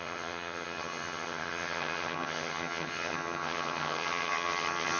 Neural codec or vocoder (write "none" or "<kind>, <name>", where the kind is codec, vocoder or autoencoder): vocoder, HiFi-GAN